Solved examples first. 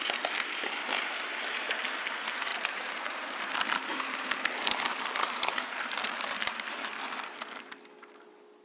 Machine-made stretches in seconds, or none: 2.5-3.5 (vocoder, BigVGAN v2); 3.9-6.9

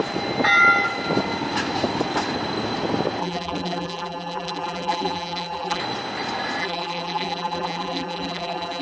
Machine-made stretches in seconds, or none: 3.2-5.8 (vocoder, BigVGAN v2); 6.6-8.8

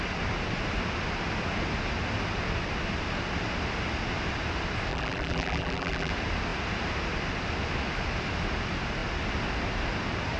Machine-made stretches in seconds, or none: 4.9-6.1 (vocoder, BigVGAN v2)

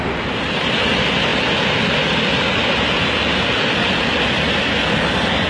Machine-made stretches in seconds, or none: none